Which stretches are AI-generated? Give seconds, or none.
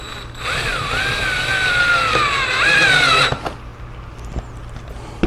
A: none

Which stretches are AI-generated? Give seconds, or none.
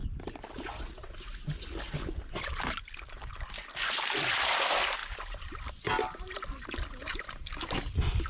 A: 2.0-3.3 (vocoder, BigVGAN v2); 5.0-8.3